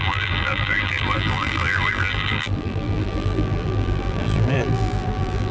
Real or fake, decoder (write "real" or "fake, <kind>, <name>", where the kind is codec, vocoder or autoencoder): fake, vocoder, BigVGAN v2